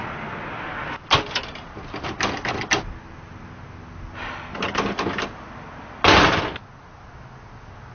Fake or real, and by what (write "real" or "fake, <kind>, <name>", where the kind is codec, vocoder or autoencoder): real